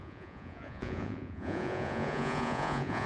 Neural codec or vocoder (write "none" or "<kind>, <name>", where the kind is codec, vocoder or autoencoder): vocoder, Vocos